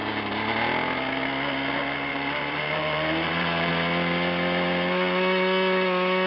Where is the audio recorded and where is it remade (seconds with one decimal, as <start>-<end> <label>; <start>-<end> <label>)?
0.0-2.1 recorded; 2.1-3.7 remade; 3.7-6.3 recorded